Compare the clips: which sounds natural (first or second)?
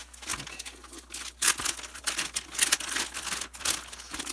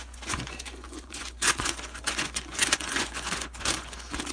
first